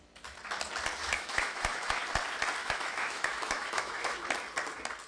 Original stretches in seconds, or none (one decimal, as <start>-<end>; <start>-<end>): 0.0-1.0; 2.0-2.6; 4.2-5.1